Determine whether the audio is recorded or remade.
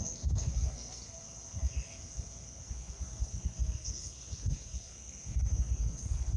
remade